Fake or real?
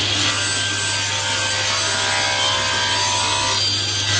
real